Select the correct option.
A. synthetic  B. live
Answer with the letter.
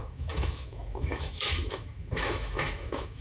A